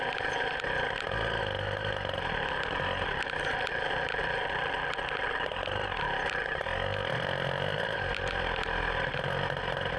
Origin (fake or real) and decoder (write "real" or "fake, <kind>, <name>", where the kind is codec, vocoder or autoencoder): real